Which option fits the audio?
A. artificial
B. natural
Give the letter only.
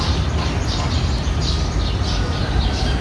B